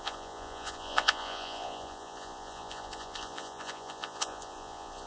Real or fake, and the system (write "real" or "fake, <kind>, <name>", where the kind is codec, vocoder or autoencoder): fake, vocoder, Vocos